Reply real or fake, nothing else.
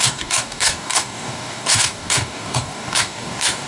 fake